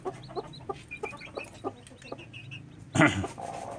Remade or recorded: recorded